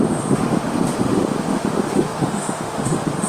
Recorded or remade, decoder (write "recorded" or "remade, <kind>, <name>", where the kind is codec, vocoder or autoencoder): remade, autoencoder, DAC-VAE